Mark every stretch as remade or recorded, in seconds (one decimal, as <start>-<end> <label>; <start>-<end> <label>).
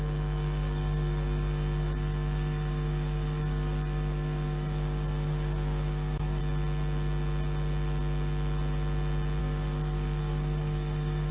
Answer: 0.0-6.4 remade; 6.4-9.4 recorded; 9.4-11.3 remade